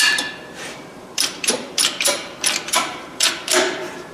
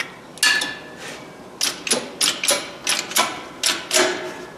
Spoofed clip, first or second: first